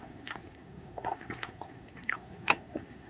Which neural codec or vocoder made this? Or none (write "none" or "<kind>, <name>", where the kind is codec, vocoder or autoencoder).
codec, SNAC